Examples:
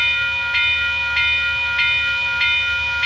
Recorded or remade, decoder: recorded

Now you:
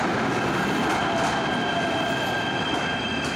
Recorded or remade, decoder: recorded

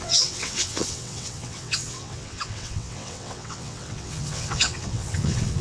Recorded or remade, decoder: remade, vocoder, WaveNeXt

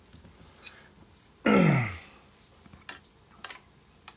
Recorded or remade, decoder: recorded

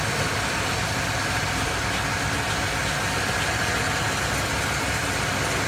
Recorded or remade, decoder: recorded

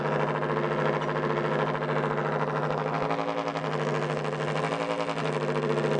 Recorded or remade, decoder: recorded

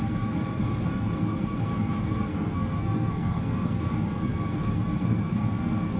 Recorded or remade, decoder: remade, codec, SNAC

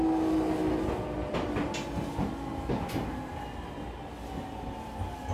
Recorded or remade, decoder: recorded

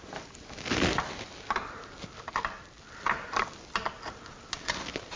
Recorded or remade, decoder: recorded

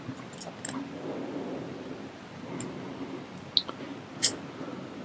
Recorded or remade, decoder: recorded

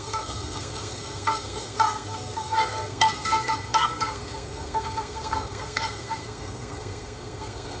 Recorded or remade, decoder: remade, codec, SNAC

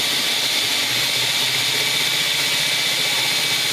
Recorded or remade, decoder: recorded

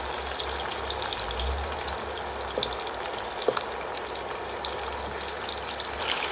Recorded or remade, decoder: recorded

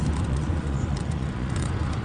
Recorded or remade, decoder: remade, vocoder, Vocos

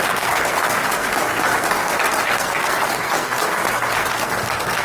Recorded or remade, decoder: remade, codec, SNAC